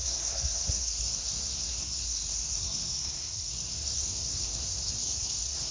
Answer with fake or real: fake